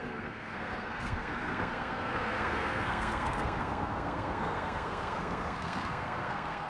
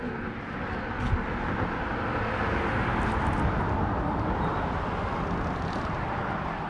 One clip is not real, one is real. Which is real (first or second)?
second